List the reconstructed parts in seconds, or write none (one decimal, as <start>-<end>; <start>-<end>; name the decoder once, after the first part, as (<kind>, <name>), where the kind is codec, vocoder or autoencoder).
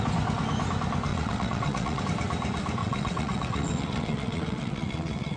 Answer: 1.1-2.0 (vocoder, WaveNeXt); 2.8-5.4